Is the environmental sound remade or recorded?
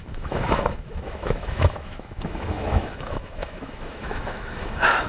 remade